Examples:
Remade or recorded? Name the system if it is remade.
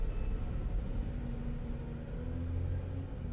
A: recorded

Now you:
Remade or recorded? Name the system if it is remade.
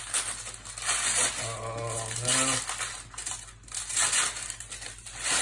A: recorded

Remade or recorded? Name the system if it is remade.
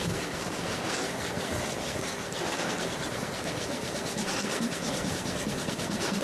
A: remade, codec, SNAC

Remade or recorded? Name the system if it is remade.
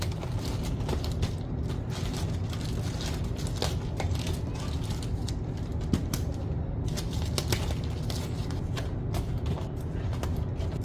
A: recorded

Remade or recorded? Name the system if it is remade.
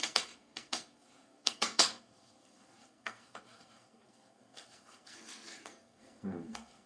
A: remade, codec, SNAC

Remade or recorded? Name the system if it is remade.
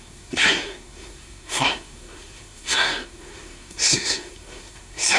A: remade, codec, SNAC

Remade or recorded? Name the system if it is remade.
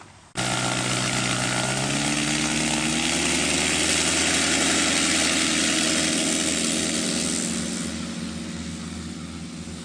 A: recorded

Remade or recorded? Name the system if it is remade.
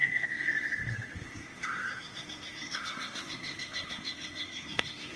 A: remade, codec, SNAC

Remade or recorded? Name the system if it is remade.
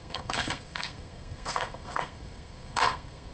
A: remade, codec, SNAC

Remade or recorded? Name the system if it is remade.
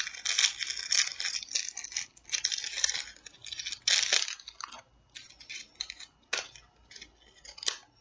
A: recorded